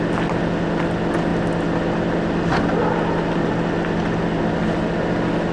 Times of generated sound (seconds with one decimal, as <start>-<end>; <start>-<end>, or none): none